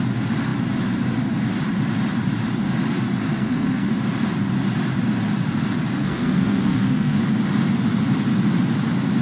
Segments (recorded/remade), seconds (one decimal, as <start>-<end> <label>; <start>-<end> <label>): 0.0-3.3 recorded; 3.3-3.9 remade; 3.9-6.0 recorded; 6.0-7.2 remade; 7.2-9.2 recorded